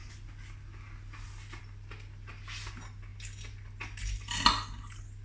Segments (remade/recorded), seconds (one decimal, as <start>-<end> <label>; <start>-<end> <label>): 0.0-5.2 recorded